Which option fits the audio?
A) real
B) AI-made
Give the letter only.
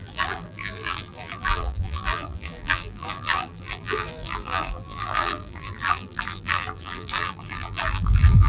B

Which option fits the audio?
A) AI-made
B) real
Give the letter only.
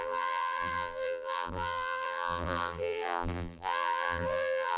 A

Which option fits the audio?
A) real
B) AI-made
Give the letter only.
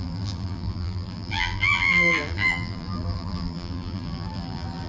B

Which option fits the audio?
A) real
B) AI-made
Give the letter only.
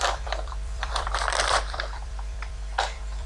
B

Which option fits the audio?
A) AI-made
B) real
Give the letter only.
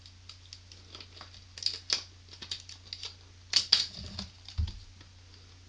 B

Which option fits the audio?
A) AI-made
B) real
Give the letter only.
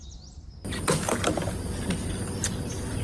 B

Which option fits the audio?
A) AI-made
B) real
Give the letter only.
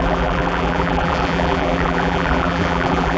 A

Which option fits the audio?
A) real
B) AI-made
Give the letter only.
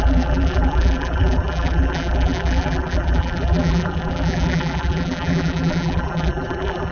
B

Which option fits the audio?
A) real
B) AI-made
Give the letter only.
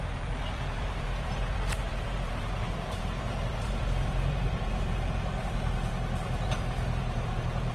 B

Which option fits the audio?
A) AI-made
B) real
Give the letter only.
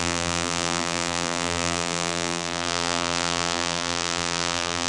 A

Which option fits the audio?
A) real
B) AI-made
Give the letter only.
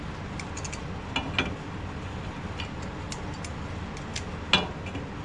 A